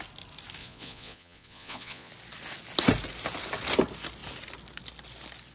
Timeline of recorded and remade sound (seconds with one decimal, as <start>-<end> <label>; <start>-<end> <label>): 0.0-0.6 recorded; 0.6-2.1 remade; 2.1-5.5 recorded